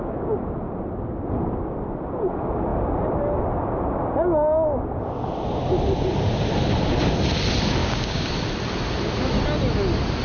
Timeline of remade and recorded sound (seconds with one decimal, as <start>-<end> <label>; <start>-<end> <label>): 0.0-7.8 recorded; 7.8-8.3 remade; 8.3-10.2 recorded